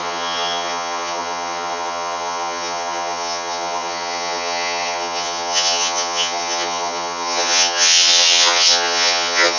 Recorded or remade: remade